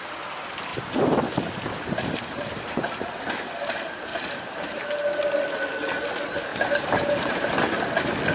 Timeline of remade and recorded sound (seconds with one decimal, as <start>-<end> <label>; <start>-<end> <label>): 0.0-0.7 recorded; 0.7-3.5 remade; 3.5-4.1 recorded; 4.1-5.0 remade; 5.0-6.5 recorded; 6.5-7.3 remade; 7.3-8.3 recorded